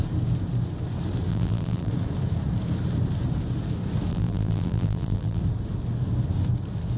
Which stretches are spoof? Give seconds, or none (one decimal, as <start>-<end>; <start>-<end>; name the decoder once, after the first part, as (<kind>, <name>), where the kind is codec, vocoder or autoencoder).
1.3-1.9 (vocoder, BigVGAN v2); 4.1-5.4